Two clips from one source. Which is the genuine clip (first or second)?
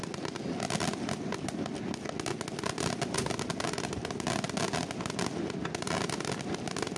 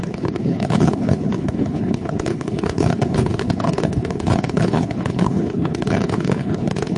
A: first